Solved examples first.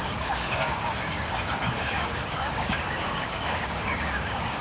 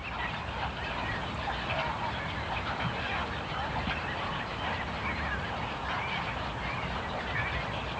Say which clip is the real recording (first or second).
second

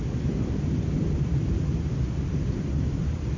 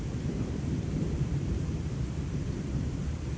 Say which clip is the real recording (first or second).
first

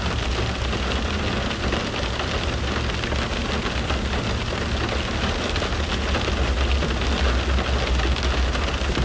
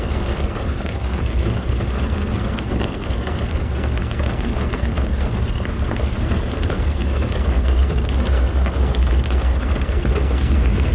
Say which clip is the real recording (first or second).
first